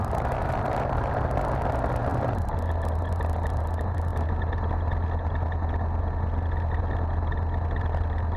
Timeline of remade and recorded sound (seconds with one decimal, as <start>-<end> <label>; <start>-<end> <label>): 0.0-8.4 recorded